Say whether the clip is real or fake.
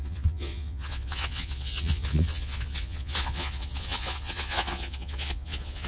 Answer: fake